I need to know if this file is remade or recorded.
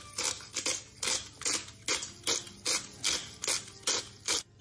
recorded